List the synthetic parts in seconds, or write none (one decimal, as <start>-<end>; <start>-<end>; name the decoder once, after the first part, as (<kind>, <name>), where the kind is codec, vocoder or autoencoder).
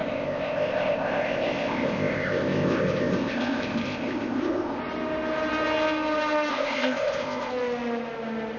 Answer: 0.0-4.8 (codec, ZipCodec); 6.5-7.5